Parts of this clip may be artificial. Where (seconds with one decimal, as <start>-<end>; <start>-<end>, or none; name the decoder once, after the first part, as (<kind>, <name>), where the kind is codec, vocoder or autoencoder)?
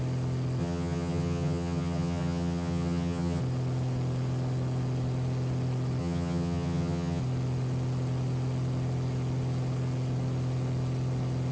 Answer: 0.6-3.4 (vocoder, HiFi-GAN); 6.0-7.2